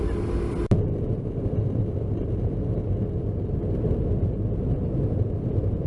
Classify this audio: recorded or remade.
recorded